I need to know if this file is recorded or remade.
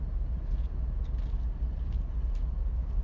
recorded